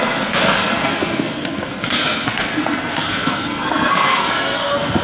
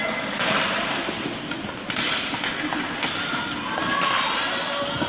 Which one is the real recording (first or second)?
second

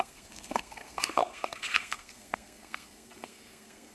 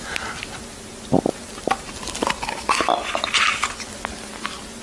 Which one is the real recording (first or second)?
second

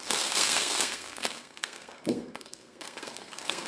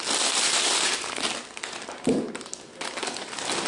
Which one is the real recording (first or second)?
second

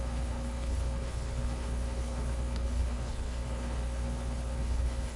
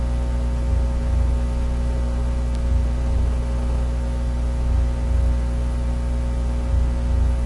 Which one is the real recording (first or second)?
second